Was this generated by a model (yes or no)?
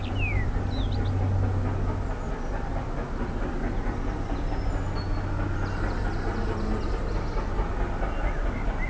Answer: no